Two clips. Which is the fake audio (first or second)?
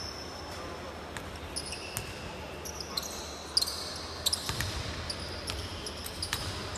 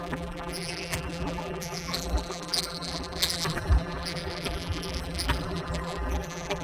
second